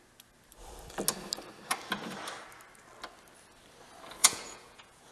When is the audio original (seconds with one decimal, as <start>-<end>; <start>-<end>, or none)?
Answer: 0.0-4.2